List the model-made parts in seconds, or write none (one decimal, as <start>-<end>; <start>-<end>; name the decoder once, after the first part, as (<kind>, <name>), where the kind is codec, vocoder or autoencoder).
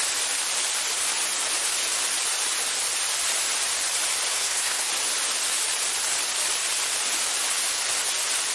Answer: 4.3-4.9 (codec, SNAC)